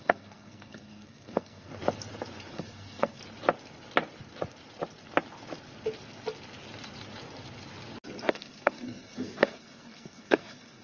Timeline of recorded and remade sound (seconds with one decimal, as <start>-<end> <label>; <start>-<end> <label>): 0.0-1.7 remade; 1.7-2.5 recorded; 2.5-3.2 remade; 3.2-8.3 recorded; 8.3-10.8 remade